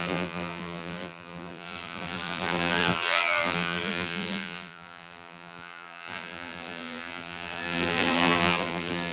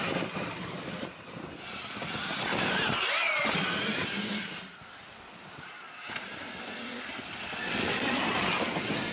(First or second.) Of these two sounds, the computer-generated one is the first